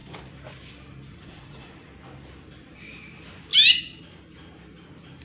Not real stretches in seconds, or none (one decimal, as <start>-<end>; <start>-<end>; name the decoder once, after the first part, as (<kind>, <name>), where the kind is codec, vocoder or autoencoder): 1.1-1.9 (vocoder, Vocos)